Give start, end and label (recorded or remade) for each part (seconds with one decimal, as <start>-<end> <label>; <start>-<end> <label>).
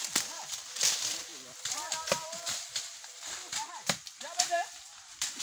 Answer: 0.0-5.4 recorded